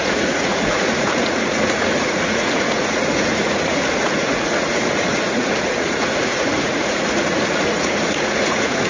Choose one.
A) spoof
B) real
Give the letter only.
A